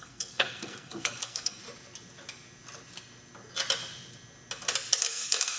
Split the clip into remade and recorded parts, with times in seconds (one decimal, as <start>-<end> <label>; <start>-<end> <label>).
0.0-1.6 remade; 1.6-5.0 recorded; 5.0-5.6 remade

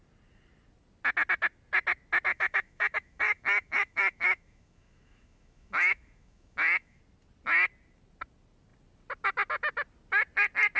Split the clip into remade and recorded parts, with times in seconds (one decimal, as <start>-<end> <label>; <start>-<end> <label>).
0.0-2.3 recorded; 2.3-7.0 remade; 7.0-10.8 recorded